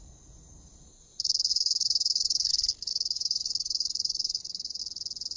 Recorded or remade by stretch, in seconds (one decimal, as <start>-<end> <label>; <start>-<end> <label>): 0.0-1.5 recorded; 1.5-2.5 remade; 2.5-2.9 recorded; 2.9-4.8 remade; 4.8-5.4 recorded